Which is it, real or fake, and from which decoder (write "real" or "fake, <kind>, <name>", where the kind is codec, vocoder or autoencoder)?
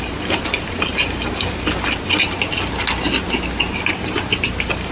real